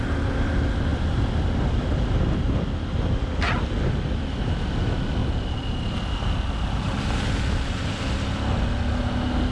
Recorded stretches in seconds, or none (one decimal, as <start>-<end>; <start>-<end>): 0.0-0.9; 1.8-5.2; 5.8-9.5